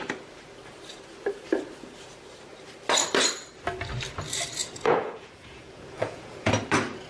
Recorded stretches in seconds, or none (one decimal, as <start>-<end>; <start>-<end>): 0.0-4.6; 6.5-7.1